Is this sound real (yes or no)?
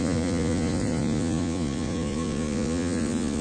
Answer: no